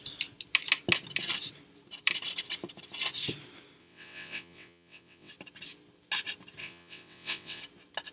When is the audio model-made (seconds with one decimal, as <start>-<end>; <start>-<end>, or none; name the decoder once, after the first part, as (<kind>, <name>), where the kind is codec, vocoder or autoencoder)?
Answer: 3.8-5.3 (vocoder, WaveNeXt); 6.6-7.6

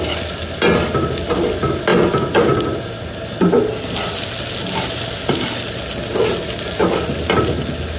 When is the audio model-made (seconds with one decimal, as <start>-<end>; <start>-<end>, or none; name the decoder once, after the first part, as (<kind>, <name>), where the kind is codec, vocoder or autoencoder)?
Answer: none

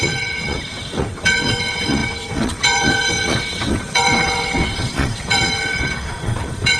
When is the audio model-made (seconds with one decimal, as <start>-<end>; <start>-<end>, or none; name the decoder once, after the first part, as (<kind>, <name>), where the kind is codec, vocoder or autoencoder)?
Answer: 0.0-6.8 (vocoder, WaveNeXt)

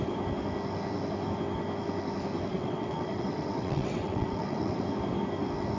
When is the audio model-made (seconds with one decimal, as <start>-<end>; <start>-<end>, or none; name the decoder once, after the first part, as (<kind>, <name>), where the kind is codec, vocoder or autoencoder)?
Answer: 2.5-4.8 (vocoder, WaveNeXt)